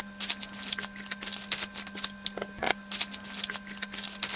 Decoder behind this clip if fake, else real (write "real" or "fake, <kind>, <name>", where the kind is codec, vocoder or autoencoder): real